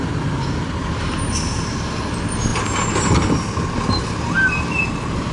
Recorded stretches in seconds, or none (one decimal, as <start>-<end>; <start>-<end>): 0.0-5.3